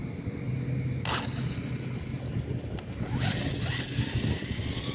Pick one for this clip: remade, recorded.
recorded